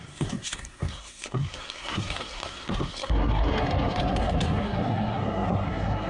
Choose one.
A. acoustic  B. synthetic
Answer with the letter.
B